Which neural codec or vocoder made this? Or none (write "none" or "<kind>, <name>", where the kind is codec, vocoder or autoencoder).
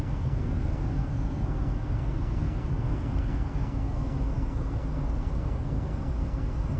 codec, SNAC